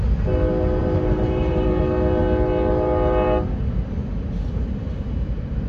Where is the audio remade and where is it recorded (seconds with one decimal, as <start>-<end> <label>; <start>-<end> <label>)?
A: 0.0-0.8 recorded; 0.8-1.8 remade; 1.8-5.7 recorded